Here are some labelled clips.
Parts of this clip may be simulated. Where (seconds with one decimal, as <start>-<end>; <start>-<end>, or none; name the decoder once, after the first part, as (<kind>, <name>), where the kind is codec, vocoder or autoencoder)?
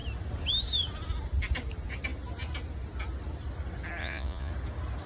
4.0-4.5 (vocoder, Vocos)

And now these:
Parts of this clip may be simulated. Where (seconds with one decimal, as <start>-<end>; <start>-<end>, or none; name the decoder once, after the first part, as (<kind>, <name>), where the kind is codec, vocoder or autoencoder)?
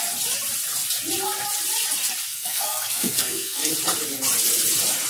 2.3-3.7 (codec, SNAC)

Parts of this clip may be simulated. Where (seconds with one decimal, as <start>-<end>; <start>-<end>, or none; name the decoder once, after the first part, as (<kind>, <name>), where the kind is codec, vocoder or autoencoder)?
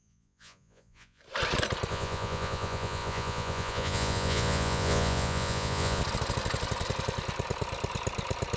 0.0-1.2 (vocoder, Vocos); 1.9-6.0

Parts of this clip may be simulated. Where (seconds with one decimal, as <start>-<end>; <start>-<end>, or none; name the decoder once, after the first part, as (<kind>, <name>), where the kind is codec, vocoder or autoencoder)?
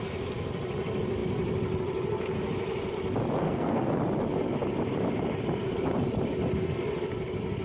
3.4-3.9 (codec, SNAC)